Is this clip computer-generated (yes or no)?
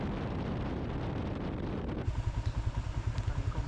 no